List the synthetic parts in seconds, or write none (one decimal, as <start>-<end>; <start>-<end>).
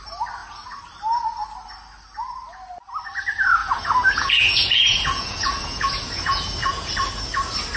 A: 3.6-6.9